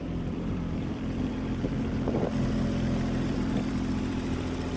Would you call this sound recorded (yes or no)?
no